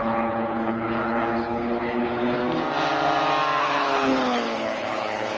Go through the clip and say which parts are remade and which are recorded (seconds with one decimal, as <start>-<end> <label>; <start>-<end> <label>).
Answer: 0.0-2.4 remade; 2.4-3.6 recorded; 3.6-5.4 remade